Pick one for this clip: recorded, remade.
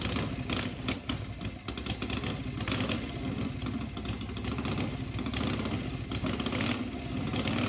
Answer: recorded